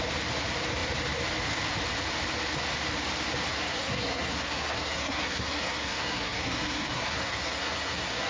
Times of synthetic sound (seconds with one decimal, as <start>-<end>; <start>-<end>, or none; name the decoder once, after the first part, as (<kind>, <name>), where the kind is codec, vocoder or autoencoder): 3.5-8.3 (codec, SNAC)